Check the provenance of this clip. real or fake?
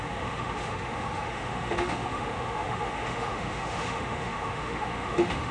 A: fake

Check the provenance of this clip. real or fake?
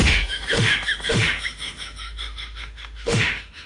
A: fake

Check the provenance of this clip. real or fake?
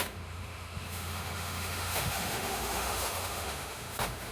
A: fake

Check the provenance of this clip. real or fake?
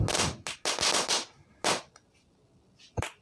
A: real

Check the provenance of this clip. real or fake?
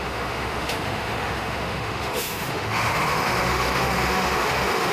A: fake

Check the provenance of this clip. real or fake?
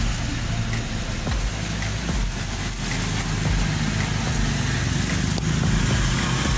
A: real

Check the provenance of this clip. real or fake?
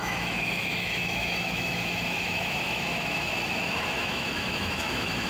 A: fake